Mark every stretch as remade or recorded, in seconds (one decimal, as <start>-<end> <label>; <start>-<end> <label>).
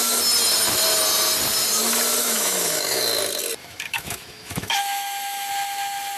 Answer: 0.0-2.2 recorded; 2.2-3.0 remade; 3.0-3.6 recorded; 3.6-5.5 remade; 5.5-6.2 recorded